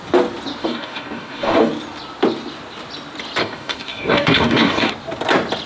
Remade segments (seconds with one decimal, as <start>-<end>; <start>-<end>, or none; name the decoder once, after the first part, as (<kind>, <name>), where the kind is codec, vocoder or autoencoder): 0.6-1.7 (codec, DAC); 3.4-4.9